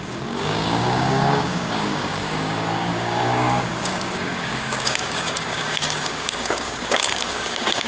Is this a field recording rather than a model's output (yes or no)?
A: no